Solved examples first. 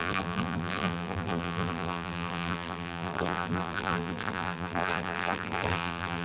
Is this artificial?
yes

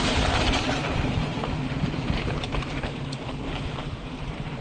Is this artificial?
yes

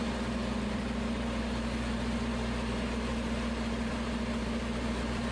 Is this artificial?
yes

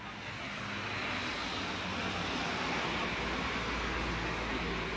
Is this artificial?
no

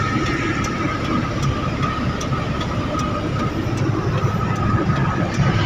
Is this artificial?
no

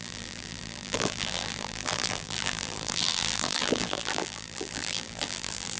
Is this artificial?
yes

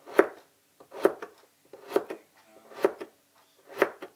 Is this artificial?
no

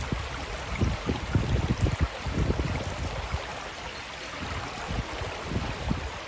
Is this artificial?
no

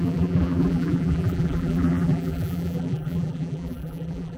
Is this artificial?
yes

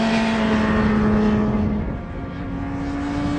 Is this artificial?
no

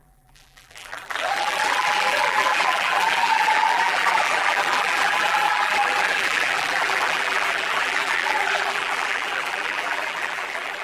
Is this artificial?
yes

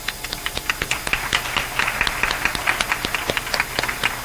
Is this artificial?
no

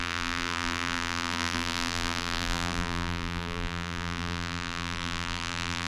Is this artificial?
yes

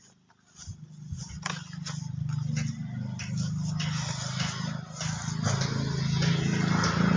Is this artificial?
no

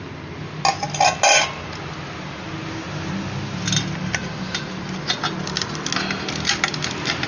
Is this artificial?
no